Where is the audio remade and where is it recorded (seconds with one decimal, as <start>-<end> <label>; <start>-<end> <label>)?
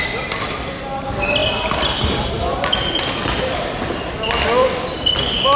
0.0-5.6 recorded